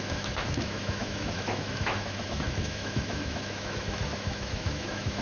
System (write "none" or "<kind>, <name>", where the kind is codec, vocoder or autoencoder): autoencoder, DAC-VAE